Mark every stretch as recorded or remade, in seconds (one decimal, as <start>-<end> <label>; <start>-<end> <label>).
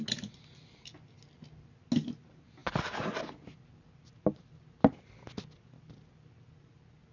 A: 0.0-7.1 recorded